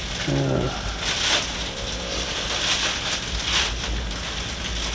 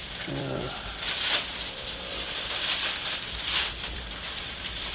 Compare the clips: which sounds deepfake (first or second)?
second